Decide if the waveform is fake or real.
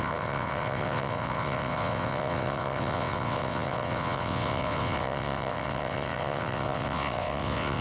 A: fake